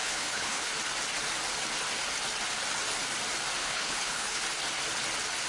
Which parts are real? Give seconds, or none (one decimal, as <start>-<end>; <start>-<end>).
0.7-3.6; 4.4-5.5